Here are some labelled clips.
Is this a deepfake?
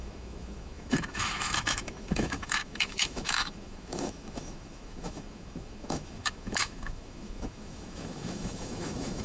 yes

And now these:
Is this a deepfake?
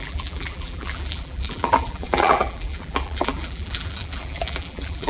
yes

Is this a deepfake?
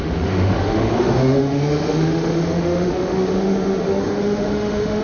yes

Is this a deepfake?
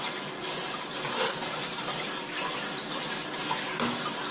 no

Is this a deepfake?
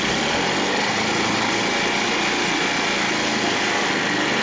no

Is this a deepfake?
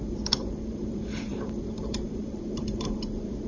yes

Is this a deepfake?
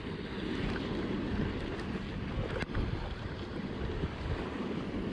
no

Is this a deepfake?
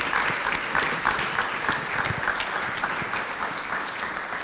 no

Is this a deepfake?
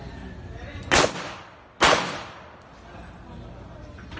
no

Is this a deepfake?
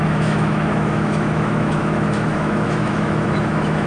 yes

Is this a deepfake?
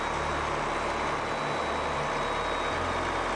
no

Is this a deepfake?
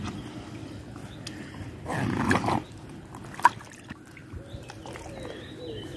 no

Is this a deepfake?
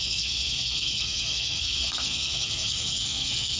yes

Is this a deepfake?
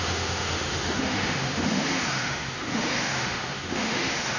yes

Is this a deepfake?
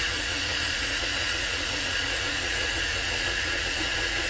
yes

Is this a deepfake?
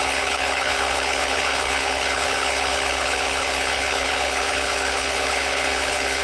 yes